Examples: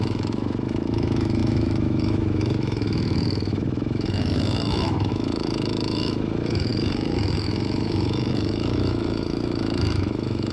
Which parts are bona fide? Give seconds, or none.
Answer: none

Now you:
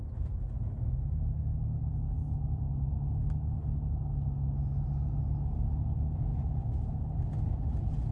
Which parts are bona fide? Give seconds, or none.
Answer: 0.0-8.1

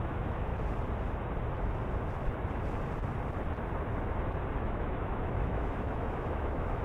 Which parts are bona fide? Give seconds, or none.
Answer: 0.5-4.6

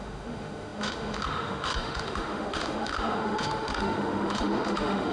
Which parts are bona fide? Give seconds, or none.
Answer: none

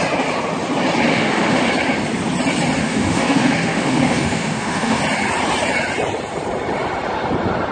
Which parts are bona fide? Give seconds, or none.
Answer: 0.0-1.1; 1.7-2.8; 5.0-7.7